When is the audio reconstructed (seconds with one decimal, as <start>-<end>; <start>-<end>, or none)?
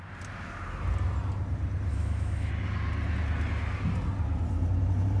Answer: 1.9-2.5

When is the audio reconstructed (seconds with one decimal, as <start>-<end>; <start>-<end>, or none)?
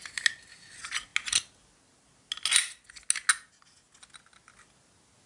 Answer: none